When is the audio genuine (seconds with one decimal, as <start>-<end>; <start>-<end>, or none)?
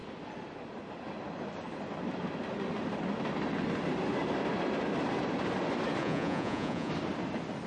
0.0-6.0; 6.9-7.7